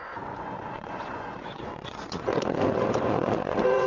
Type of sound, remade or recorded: remade